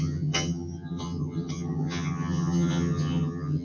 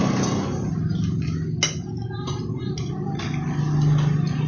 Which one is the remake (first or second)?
first